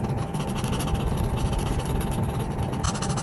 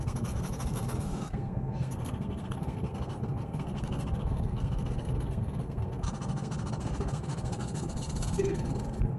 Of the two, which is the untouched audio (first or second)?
first